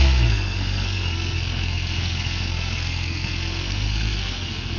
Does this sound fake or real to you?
fake